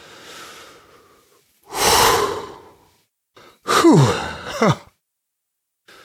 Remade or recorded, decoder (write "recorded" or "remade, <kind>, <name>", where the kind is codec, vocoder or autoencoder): recorded